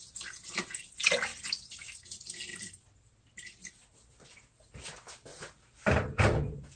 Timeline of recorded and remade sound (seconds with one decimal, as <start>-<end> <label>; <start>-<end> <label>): 0.0-6.8 recorded